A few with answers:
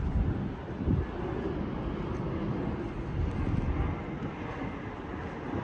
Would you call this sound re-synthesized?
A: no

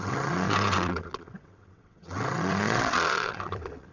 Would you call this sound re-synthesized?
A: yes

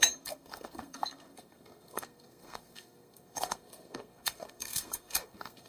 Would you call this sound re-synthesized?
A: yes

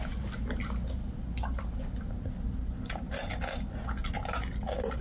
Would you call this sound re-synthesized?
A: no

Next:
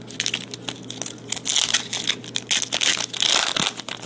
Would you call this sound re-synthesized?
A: no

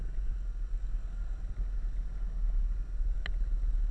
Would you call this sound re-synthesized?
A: no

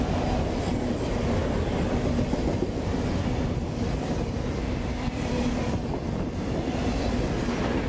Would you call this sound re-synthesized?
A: no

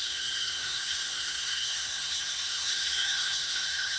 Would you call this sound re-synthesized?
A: yes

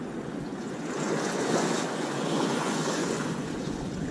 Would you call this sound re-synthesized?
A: yes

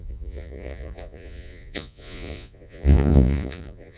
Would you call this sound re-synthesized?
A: yes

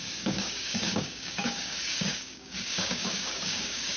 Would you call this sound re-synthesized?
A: yes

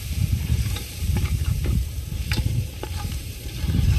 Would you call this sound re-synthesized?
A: yes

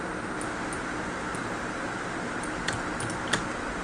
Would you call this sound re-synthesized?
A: no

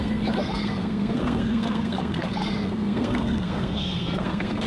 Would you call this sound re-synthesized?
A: yes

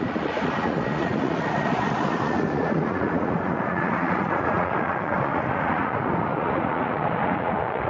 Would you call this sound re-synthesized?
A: yes